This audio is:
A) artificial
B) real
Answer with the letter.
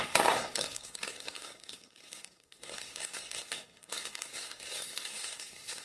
A